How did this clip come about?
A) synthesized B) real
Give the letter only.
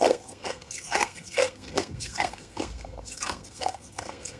A